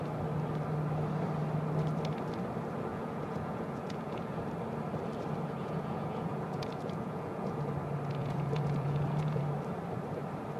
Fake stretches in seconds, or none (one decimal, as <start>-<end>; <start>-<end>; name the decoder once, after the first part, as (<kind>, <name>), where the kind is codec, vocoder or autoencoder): 2.9-4.4 (vocoder, Vocos); 5.6-7.6; 8.2-9.4